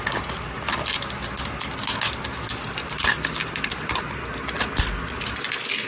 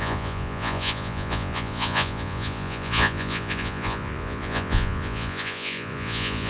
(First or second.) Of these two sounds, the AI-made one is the second